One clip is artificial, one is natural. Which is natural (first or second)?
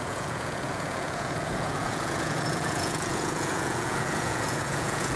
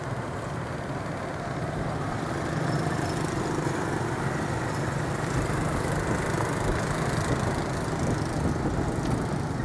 second